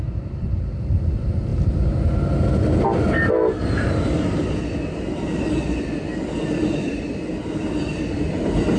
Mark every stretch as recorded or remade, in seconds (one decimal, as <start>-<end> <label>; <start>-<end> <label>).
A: 0.0-8.8 recorded